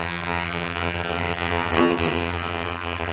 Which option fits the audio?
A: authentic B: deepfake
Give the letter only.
B